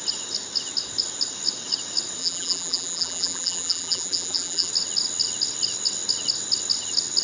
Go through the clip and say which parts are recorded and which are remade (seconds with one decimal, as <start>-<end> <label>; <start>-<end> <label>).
0.0-2.2 recorded; 2.2-4.7 remade; 4.7-7.2 recorded

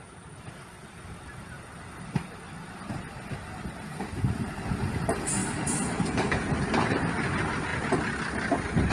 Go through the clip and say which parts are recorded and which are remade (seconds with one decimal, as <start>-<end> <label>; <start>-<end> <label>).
0.0-3.9 recorded; 3.9-4.5 remade; 4.5-5.4 recorded; 5.4-6.3 remade; 6.3-8.9 recorded